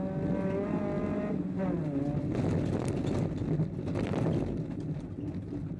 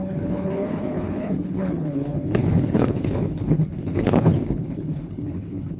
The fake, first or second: second